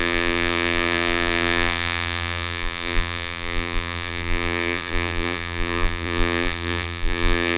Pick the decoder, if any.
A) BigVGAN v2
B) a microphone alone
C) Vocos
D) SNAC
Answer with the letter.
A